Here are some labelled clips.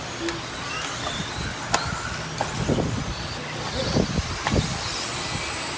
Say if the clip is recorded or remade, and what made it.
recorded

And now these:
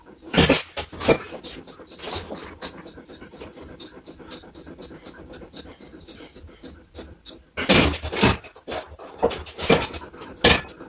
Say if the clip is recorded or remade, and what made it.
recorded